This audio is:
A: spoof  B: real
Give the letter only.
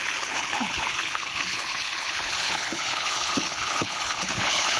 A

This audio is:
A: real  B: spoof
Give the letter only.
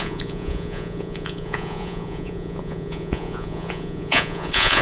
B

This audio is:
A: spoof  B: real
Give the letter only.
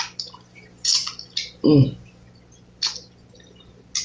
B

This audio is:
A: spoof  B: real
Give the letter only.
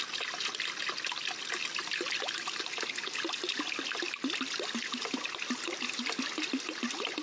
B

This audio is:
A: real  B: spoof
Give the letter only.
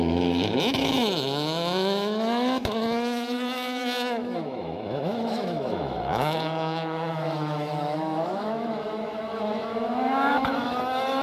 B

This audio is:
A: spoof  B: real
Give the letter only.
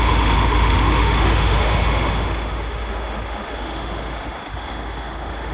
A